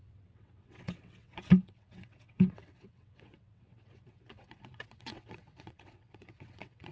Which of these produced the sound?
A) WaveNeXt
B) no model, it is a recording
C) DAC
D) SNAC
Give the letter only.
A